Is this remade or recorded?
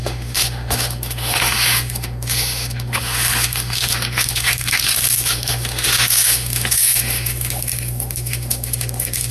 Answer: remade